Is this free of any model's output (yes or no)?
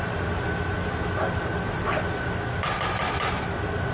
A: yes